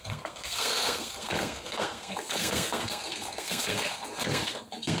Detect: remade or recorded remade